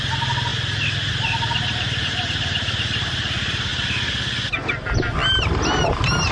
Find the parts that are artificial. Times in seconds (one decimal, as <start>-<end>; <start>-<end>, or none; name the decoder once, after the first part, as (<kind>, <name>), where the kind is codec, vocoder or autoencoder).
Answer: 0.0-0.5 (vocoder, BigVGAN v2); 1.1-3.7; 4.7-6.3